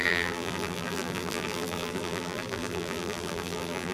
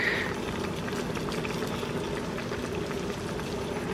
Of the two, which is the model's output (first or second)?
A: first